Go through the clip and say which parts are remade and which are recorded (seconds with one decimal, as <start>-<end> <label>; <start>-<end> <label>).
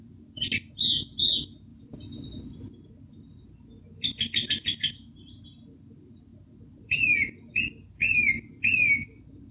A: 0.0-1.7 recorded; 1.7-2.3 remade; 2.3-9.5 recorded